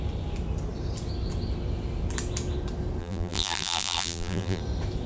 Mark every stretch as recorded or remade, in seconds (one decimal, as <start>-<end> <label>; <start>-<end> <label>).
0.0-3.0 recorded; 3.0-4.6 remade; 4.6-5.1 recorded